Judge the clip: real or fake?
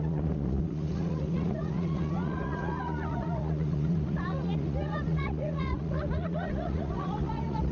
fake